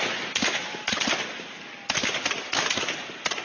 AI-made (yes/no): no